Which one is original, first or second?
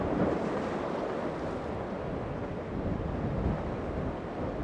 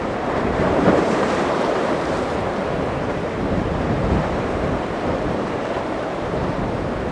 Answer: first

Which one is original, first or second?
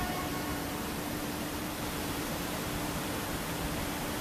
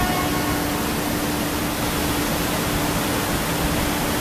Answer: second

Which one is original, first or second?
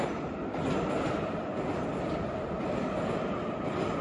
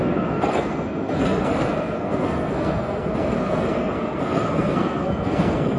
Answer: first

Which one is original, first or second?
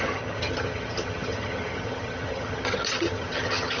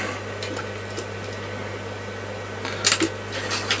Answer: second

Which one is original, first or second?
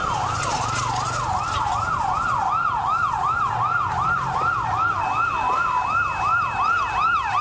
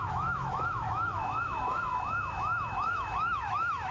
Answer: first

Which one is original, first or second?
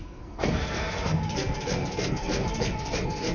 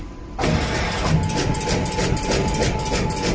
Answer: second